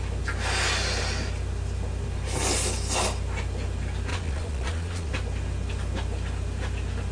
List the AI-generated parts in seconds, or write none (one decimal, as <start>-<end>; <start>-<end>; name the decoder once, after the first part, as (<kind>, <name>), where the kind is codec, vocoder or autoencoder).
4.1-5.1 (vocoder, Vocos)